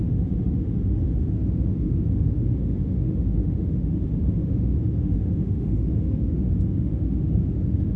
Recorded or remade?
remade